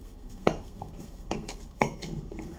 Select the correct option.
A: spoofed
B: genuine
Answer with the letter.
A